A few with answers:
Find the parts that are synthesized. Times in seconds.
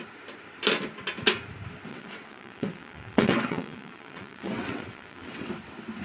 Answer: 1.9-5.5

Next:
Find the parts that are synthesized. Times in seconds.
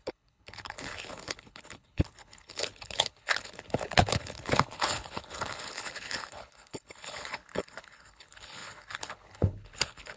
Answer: 0.0-10.2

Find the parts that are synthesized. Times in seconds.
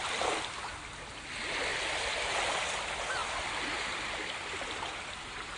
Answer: 1.7-2.6; 3.2-5.6